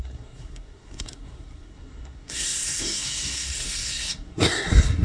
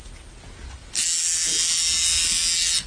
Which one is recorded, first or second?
second